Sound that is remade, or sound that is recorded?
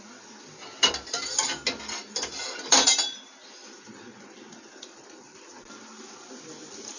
recorded